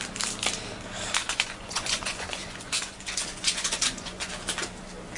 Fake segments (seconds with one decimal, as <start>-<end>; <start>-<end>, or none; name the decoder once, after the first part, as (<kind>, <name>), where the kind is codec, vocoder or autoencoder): 1.2-4.3 (vocoder, Vocos)